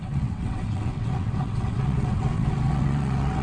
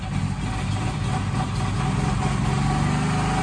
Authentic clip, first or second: second